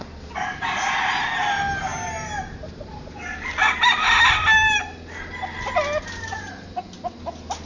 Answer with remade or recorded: recorded